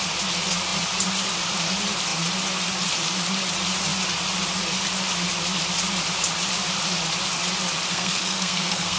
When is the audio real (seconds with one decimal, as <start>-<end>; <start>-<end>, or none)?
0.0-7.9